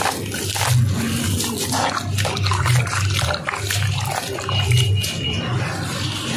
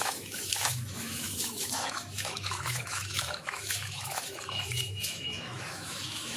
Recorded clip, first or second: first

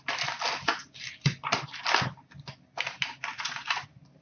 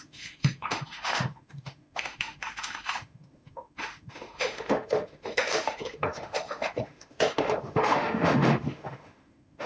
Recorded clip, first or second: first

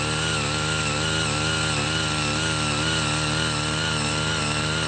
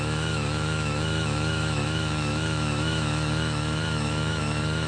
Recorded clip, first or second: first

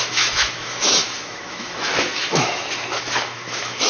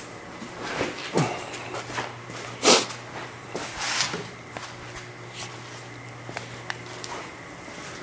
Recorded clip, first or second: second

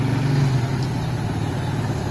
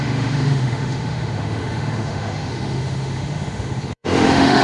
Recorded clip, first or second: first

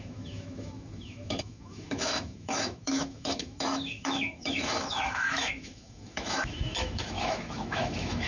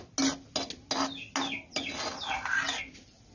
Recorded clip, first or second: second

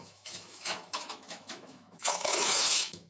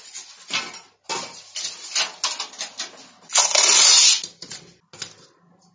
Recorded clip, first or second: second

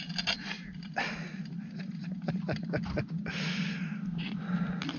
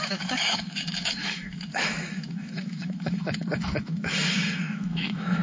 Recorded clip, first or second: first